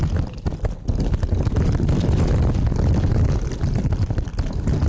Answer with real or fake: real